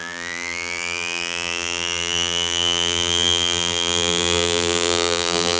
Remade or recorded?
remade